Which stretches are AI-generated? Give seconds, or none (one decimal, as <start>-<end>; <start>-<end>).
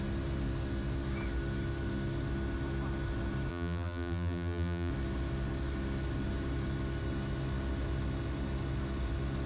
3.5-4.9